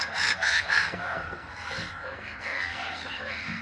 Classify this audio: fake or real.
fake